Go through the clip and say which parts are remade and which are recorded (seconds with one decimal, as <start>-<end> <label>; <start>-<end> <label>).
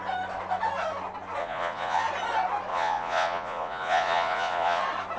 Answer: 0.0-1.4 recorded; 1.4-2.0 remade; 2.0-2.7 recorded; 2.7-4.8 remade; 4.8-5.2 recorded